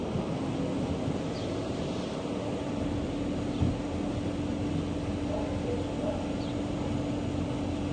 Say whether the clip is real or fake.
real